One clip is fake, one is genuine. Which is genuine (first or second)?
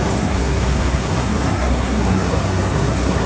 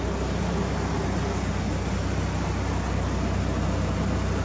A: second